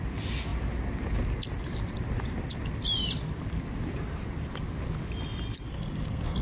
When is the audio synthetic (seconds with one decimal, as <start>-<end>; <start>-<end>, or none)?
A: 5.7-6.4